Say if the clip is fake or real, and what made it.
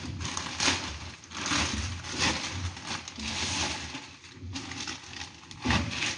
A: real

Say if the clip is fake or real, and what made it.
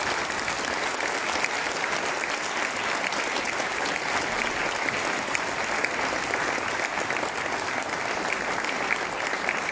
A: real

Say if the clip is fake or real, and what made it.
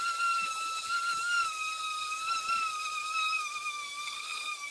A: real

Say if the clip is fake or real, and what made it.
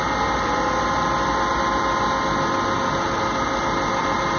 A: real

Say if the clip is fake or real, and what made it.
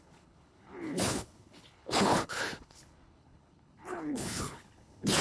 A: fake, codec, HILCodec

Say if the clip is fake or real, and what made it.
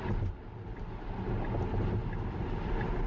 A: real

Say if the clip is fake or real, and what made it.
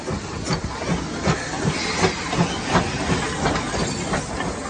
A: real